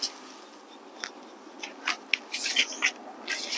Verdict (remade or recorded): recorded